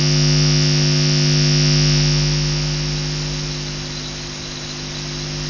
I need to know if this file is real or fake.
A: real